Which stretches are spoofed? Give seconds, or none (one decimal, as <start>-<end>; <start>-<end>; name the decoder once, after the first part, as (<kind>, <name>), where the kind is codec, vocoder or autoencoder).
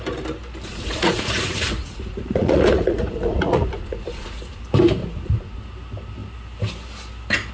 0.7-4.6 (vocoder, Vocos); 5.0-5.6